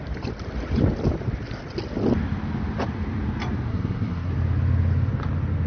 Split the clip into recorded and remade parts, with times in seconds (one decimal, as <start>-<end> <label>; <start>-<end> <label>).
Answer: 0.0-3.7 recorded; 3.7-4.3 remade; 4.3-5.7 recorded